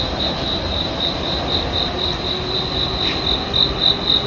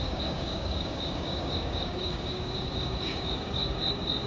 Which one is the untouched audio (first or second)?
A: first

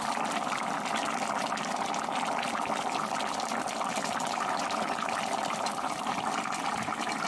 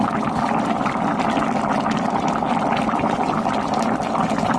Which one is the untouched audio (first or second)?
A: second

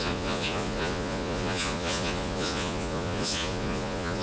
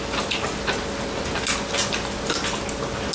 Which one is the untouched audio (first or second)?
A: second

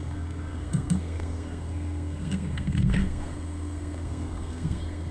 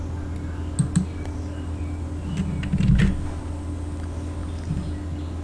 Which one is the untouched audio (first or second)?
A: second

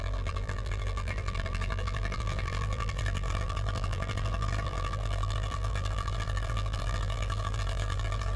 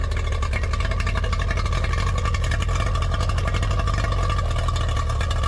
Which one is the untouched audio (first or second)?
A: second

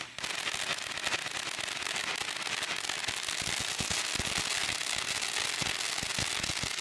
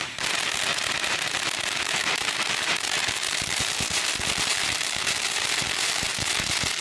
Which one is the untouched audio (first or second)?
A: first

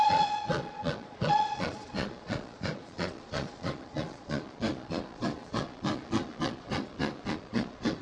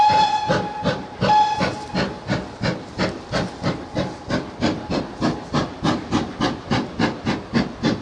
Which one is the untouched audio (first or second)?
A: second